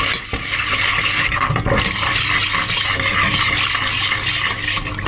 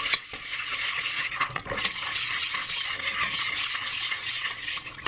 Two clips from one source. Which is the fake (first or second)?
second